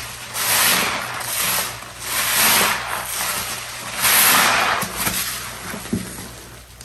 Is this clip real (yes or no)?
yes